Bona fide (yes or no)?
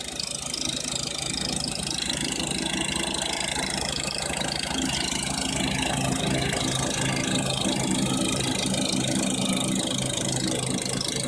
yes